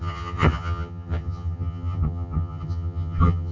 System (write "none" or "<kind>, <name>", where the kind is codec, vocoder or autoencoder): vocoder, HiFi-GAN